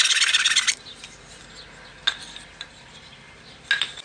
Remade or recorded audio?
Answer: recorded